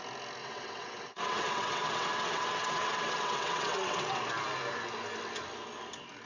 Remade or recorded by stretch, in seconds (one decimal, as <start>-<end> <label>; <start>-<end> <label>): 0.0-0.4 recorded; 0.4-4.2 remade; 4.2-6.3 recorded